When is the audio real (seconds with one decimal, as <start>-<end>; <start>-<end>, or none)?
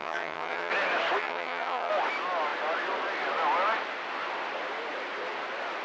0.7-1.2; 1.9-5.8